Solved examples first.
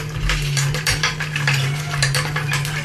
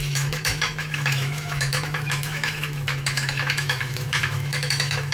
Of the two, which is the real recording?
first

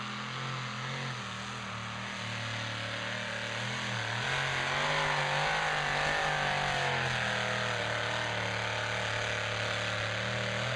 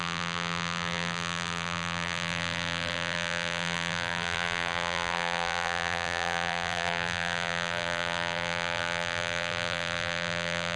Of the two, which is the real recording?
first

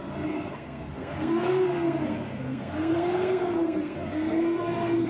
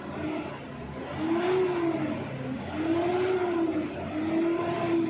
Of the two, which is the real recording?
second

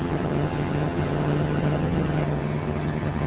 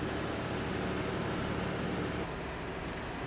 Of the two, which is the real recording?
second